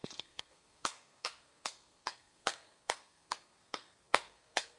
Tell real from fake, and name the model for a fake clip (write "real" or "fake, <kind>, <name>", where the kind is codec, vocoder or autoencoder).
fake, codec, SNAC